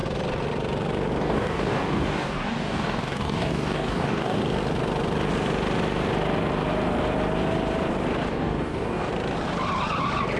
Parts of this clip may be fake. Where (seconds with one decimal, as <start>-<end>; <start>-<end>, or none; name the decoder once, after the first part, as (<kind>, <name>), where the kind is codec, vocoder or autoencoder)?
1.2-4.4 (codec, DAC); 8.3-9.1